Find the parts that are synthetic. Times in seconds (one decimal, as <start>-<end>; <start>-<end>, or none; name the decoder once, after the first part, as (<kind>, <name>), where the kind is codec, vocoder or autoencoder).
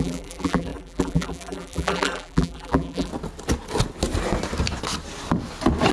0.0-3.1 (vocoder, BigVGAN v2)